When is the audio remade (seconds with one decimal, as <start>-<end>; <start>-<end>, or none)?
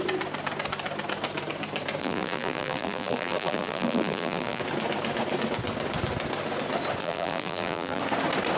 2.0-4.6; 7.0-8.0